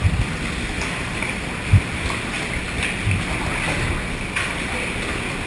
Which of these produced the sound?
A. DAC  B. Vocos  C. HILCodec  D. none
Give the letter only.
D